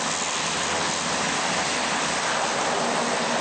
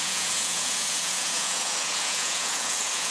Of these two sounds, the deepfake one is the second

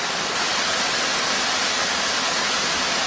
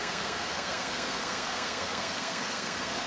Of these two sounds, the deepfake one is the second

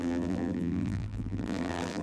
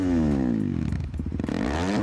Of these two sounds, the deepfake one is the first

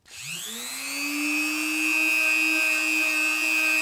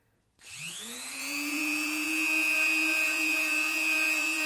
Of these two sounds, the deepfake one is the second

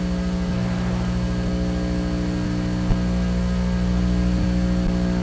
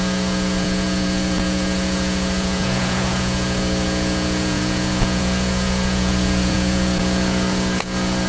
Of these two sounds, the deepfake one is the second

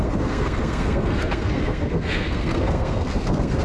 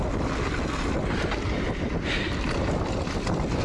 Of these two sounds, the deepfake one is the first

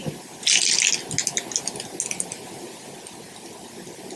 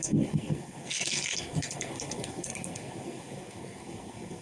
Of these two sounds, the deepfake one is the second